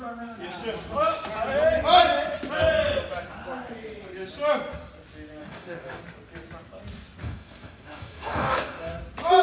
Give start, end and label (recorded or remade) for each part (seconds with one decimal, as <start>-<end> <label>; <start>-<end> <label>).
0.0-5.4 recorded; 5.4-6.0 remade; 6.0-7.2 recorded; 7.2-9.0 remade; 9.0-9.4 recorded